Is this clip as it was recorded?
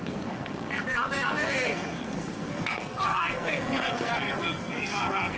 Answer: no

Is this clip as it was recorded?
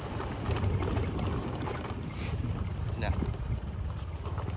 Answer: yes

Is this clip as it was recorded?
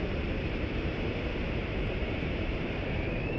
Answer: no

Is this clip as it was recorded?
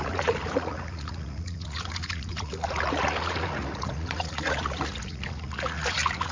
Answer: no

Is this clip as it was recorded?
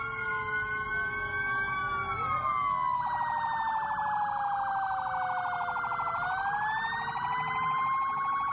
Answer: yes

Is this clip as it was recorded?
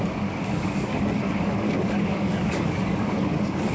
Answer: no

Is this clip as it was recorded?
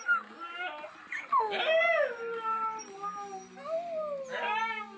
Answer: yes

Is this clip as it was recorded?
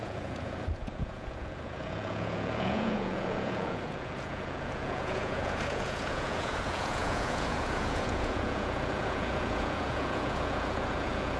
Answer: no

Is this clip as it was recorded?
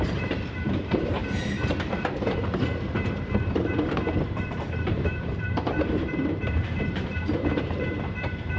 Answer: no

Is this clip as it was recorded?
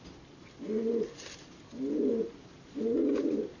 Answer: yes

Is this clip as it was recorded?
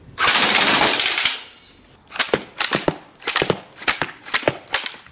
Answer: no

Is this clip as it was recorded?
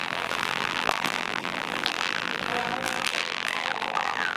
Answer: no